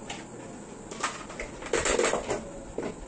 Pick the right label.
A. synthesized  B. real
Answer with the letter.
B